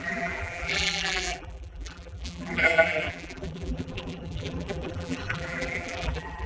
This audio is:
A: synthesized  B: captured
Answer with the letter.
A